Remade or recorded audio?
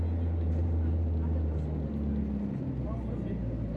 recorded